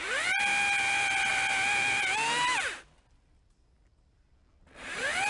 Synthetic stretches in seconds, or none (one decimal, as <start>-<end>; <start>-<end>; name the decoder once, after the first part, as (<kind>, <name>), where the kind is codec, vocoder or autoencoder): none